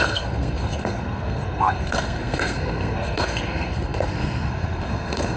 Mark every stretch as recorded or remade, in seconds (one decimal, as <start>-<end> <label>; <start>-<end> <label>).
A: 0.0-5.4 remade